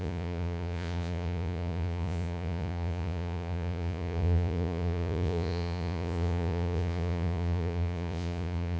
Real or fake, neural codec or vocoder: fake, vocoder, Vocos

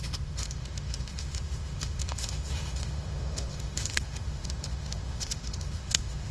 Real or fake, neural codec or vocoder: fake, autoencoder, DAC-VAE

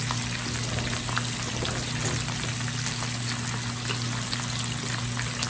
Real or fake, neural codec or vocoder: real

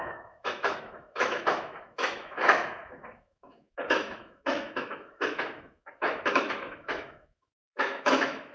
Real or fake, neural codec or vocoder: fake, autoencoder, DAC-VAE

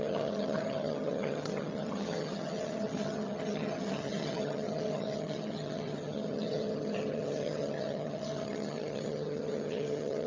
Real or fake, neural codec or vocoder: fake, vocoder, HiFi-GAN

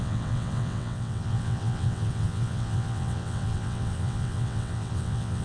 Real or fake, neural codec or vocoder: fake, vocoder, WaveNeXt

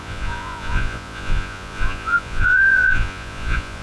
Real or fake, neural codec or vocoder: fake, vocoder, Vocos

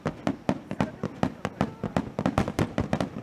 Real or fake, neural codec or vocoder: real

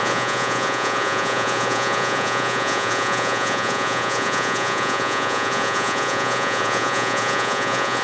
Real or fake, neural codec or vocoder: fake, vocoder, Vocos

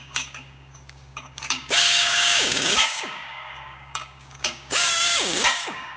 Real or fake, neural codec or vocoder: fake, codec, DAC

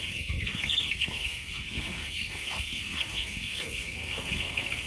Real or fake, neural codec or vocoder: fake, codec, SNAC